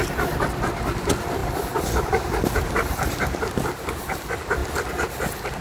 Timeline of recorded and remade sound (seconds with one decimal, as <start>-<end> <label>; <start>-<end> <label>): 0.0-5.6 recorded